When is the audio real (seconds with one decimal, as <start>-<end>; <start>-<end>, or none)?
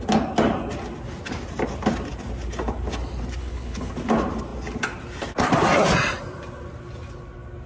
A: 0.0-3.4; 3.9-7.7